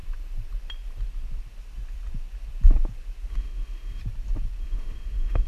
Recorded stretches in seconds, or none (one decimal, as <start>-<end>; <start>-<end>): 0.0-3.3; 4.0-4.6